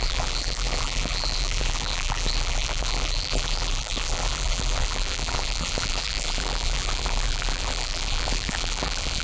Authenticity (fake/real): fake